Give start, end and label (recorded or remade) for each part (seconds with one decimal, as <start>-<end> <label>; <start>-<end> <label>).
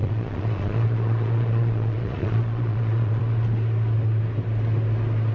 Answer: 0.0-3.2 remade; 3.2-5.3 recorded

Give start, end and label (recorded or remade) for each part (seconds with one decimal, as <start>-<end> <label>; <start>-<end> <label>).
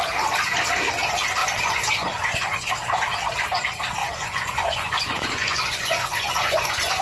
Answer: 0.0-1.4 recorded; 1.4-2.7 remade; 2.7-4.0 recorded; 4.0-7.0 remade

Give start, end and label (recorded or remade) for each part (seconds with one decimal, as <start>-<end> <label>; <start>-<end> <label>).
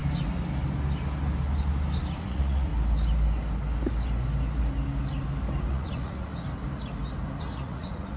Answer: 0.0-2.2 recorded; 2.2-2.7 remade; 2.7-5.7 recorded; 5.7-6.3 remade; 6.3-7.4 recorded; 7.4-8.2 remade